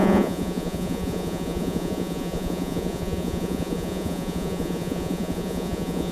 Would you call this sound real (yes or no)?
no